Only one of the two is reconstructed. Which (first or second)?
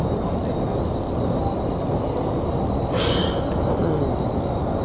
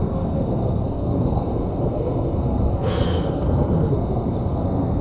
second